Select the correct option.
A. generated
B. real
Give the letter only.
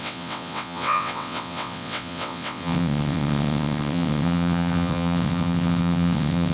A